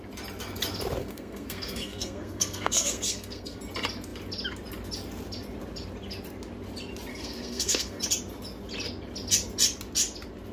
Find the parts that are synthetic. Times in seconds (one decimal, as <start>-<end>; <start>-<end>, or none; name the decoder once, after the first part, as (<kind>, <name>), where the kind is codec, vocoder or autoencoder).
1.0-3.6 (codec, SNAC); 7.1-8.0